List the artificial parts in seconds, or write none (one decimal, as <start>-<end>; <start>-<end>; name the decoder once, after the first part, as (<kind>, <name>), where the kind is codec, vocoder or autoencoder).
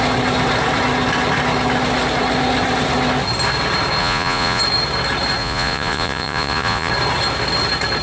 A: 4.0-4.6 (vocoder, Vocos); 5.4-6.9